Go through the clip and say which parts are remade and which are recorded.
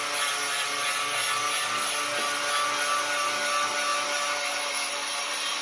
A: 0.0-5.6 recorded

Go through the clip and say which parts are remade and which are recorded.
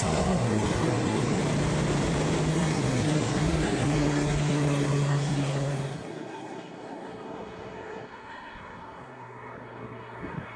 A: 0.0-1.4 remade; 1.4-2.5 recorded; 2.5-10.6 remade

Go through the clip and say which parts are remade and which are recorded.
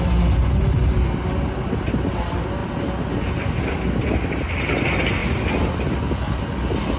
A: 0.0-7.0 recorded